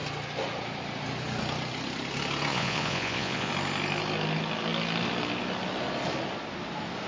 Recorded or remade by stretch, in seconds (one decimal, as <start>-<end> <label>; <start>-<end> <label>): 0.0-2.5 recorded; 2.5-3.5 remade; 3.5-7.1 recorded

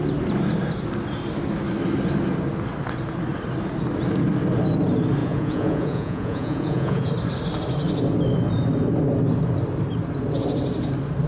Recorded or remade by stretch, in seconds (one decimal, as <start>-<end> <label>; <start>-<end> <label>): 0.0-5.2 recorded; 5.2-7.1 remade; 7.1-11.3 recorded

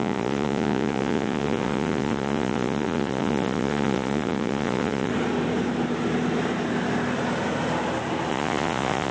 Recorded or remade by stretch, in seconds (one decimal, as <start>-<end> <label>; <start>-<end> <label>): 0.0-5.1 remade; 5.1-8.3 recorded; 8.3-9.1 remade